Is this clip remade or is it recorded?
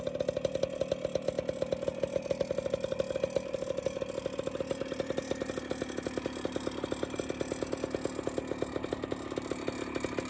recorded